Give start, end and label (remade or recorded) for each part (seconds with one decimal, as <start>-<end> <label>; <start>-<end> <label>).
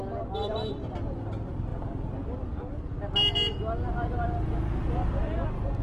0.0-5.8 recorded